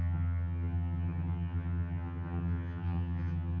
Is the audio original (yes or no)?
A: no